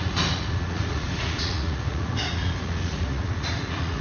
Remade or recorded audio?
remade